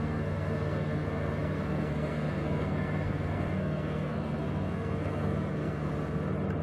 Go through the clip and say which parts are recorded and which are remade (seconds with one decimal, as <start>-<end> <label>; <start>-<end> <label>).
0.0-5.9 remade; 5.9-6.6 recorded